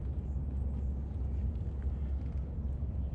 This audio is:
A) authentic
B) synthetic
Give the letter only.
A